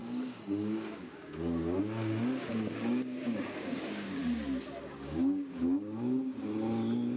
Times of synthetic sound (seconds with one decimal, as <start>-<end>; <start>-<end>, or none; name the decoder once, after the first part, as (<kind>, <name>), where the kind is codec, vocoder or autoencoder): 0.0-4.2 (codec, DAC); 4.8-6.2